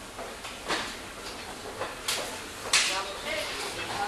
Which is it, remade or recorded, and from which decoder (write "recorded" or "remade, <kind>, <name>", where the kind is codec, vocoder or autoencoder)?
recorded